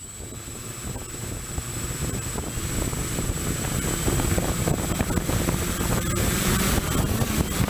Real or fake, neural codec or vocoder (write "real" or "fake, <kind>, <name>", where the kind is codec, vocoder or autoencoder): real